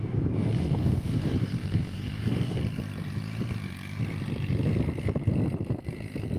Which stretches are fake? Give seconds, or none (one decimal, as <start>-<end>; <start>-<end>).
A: 0.0-2.6